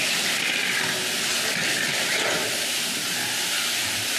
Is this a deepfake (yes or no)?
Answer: no